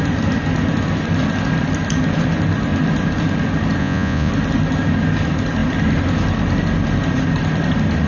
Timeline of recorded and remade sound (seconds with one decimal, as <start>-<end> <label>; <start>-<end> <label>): 0.0-3.8 recorded; 3.8-4.3 remade; 4.3-8.1 recorded